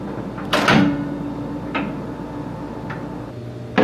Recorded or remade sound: recorded